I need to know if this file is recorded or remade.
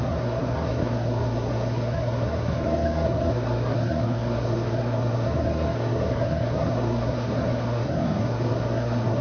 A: remade